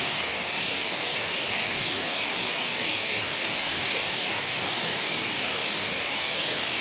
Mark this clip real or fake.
fake